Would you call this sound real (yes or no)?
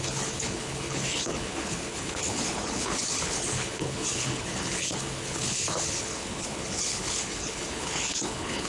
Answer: no